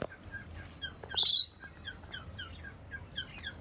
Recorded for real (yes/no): yes